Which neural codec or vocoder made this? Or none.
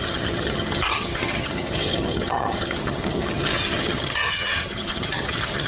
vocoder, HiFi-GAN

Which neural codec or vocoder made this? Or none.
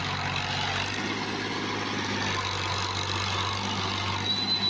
none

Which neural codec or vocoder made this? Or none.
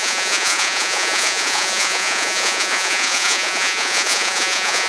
vocoder, Vocos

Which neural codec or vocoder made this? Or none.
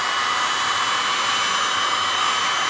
none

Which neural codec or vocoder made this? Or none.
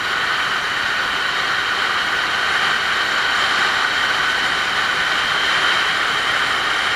none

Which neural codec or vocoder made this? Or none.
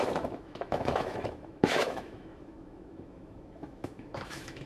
autoencoder, DAC-VAE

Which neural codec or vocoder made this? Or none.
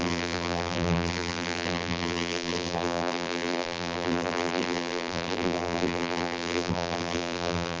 vocoder, BigVGAN v2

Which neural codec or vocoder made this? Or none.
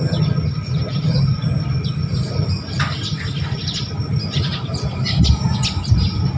none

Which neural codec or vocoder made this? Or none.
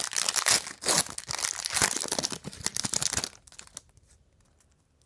none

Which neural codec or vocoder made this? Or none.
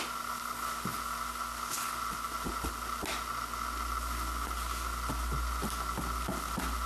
none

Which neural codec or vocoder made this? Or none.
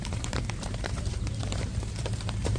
vocoder, BigVGAN v2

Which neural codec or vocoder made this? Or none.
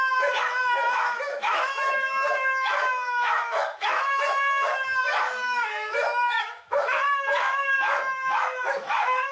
autoencoder, DAC-VAE